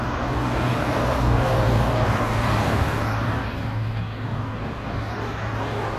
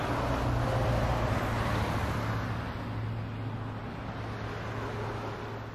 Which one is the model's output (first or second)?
first